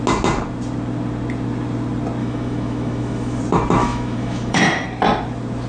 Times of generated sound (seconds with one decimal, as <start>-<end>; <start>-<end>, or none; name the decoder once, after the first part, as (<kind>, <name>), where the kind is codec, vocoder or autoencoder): 2.2-3.4 (autoencoder, DAC-VAE); 3.8-4.6